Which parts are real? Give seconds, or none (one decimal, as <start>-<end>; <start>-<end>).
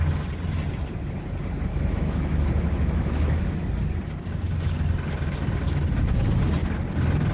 0.0-1.7; 3.5-7.3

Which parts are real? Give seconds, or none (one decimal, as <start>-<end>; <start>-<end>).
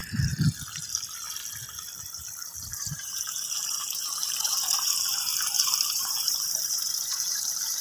0.0-2.7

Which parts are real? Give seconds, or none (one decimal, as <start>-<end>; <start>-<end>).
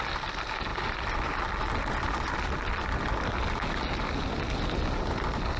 0.0-5.6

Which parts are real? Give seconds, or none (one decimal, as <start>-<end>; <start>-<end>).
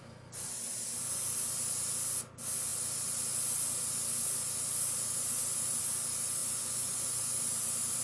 0.0-6.4; 7.4-8.0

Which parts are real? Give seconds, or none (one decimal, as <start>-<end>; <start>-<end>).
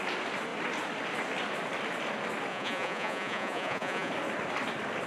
0.0-2.5; 4.1-5.1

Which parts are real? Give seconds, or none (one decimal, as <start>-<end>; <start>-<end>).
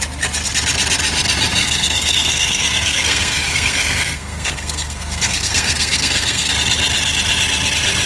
0.0-1.6; 6.5-8.1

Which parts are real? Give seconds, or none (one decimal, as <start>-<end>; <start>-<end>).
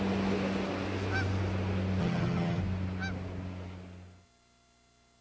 0.0-2.0; 2.6-5.2